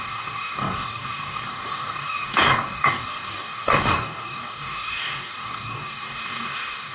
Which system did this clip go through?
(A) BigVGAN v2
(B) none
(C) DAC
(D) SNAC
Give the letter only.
C